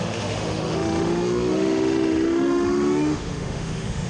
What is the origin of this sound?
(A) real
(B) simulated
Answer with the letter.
B